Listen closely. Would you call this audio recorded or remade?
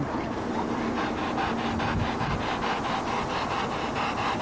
recorded